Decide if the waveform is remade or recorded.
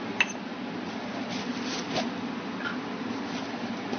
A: recorded